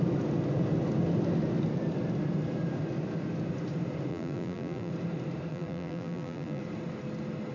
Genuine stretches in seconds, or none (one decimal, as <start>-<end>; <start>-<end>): 0.0-4.1; 4.9-5.5; 6.6-7.5